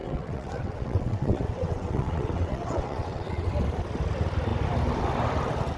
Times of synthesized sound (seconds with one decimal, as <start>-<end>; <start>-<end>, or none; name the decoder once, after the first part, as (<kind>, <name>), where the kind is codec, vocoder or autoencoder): 0.0-3.5 (vocoder, WaveNeXt)